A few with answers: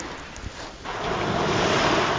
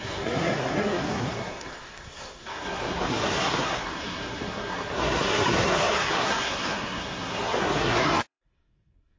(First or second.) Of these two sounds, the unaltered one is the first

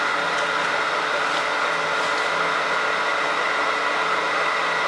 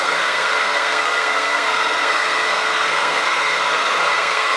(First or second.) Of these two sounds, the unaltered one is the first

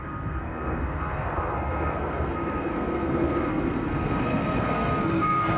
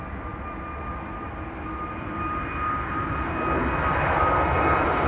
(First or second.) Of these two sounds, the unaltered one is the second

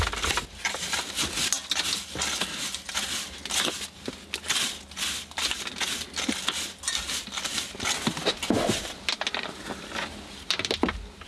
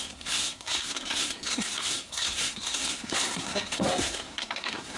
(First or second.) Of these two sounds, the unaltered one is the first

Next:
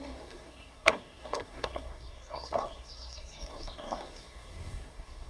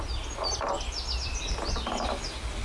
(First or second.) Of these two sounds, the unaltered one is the second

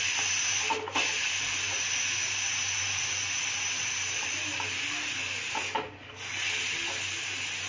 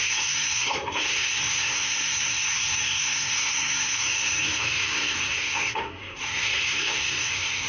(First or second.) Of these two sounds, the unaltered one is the first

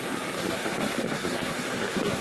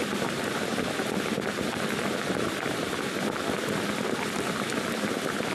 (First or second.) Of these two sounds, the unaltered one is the second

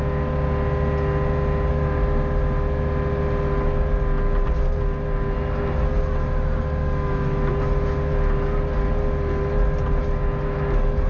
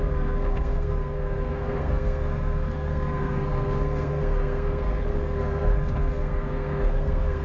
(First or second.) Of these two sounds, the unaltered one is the first